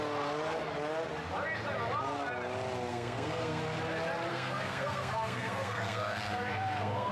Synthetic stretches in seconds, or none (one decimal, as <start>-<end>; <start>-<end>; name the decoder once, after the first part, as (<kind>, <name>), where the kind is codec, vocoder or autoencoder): 2.9-3.6 (codec, SNAC); 4.3-7.1